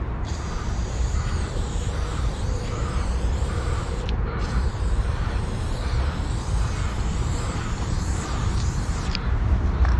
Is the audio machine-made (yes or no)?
yes